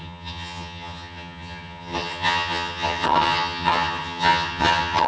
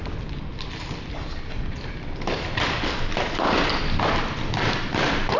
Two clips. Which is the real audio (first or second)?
second